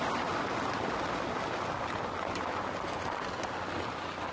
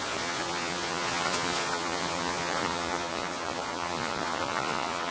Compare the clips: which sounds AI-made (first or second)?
second